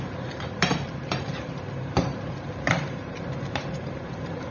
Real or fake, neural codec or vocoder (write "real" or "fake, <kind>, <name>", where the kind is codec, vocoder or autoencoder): fake, vocoder, BigVGAN v2